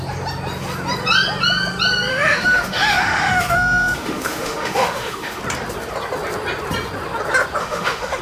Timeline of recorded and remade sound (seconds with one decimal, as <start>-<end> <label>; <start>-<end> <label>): 0.0-2.1 recorded; 2.1-5.4 remade; 5.4-7.6 recorded; 7.6-8.2 remade